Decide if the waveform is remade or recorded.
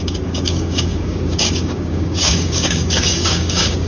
remade